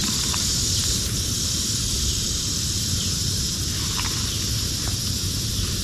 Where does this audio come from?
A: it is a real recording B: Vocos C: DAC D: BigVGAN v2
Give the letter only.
D